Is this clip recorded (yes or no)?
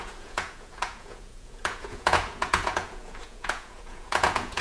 no